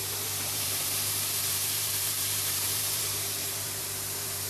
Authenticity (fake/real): fake